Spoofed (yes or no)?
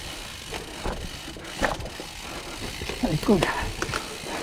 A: no